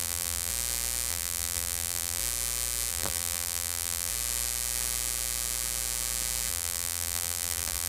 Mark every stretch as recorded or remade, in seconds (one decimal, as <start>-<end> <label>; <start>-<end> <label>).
0.0-0.5 remade; 0.5-1.1 recorded; 1.1-2.2 remade; 2.2-2.9 recorded; 2.9-4.1 remade; 4.1-6.5 recorded; 6.5-7.9 remade